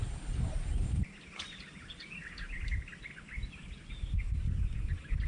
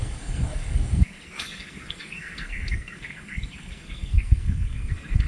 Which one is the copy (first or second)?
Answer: second